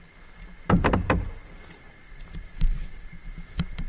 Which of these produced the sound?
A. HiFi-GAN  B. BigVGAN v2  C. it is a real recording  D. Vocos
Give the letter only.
C